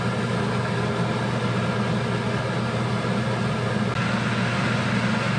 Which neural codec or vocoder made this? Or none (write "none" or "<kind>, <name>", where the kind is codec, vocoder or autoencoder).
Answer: none